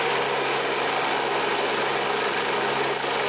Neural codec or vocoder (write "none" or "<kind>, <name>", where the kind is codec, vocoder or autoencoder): none